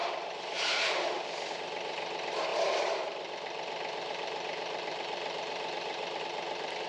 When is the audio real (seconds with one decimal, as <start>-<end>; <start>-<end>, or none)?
1.5-2.5; 6.2-6.9